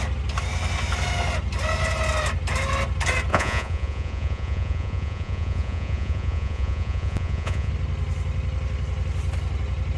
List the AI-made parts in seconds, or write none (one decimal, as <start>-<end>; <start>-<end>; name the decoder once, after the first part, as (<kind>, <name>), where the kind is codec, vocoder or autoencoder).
3.3-7.7 (vocoder, Vocos)